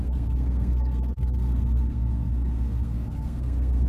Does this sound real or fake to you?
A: fake